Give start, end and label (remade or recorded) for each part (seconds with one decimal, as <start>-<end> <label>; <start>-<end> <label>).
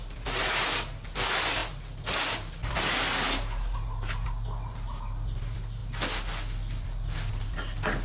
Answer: 0.0-8.0 recorded